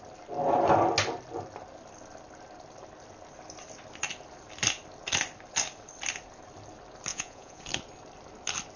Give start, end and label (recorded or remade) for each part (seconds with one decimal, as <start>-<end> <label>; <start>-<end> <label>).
0.0-7.1 recorded; 7.1-7.6 remade; 7.6-8.8 recorded